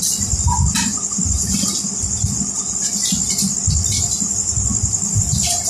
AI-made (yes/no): no